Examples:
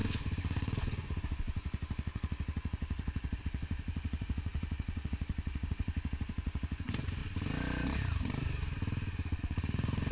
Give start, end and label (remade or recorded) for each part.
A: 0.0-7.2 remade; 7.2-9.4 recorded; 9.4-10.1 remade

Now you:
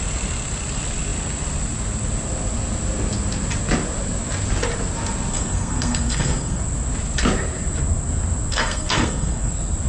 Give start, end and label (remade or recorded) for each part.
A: 0.0-5.3 recorded; 5.3-6.6 remade; 6.6-8.5 recorded; 8.5-9.5 remade; 9.5-9.9 recorded